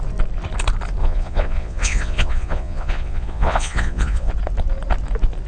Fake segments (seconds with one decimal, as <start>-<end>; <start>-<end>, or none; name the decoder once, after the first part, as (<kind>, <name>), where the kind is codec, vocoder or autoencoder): 1.0-4.3 (vocoder, Vocos)

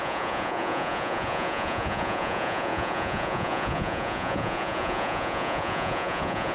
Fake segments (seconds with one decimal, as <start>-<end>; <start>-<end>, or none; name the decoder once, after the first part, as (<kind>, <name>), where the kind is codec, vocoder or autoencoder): 0.0-6.5 (vocoder, Vocos)

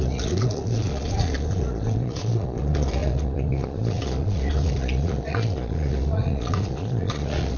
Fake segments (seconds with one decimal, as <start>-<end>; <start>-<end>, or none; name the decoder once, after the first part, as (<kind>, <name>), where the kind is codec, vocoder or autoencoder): 0.0-7.6 (vocoder, Vocos)